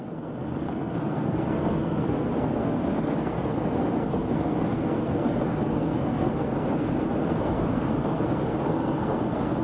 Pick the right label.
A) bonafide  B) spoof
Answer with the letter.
B